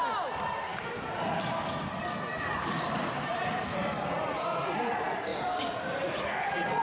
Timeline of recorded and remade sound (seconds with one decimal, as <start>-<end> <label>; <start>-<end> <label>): 0.0-5.3 recorded; 5.3-6.8 remade